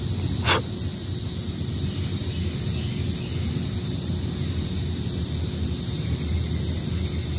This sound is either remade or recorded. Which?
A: recorded